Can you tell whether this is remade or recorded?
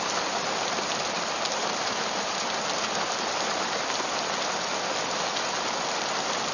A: recorded